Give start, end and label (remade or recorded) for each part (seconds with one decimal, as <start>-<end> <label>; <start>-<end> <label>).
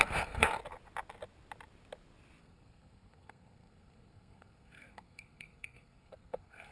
0.0-0.6 remade; 0.6-2.4 recorded; 2.4-6.7 remade